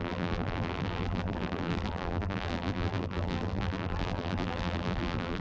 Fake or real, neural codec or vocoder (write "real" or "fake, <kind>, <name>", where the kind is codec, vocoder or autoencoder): fake, vocoder, BigVGAN v2